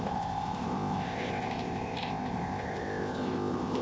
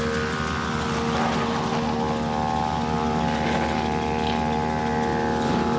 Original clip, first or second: second